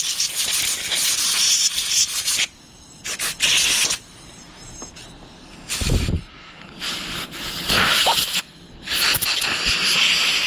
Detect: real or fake real